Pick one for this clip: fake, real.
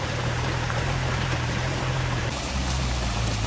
fake